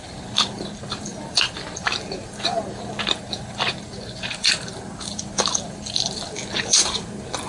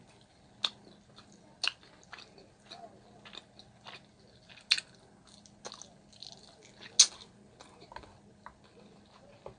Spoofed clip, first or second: first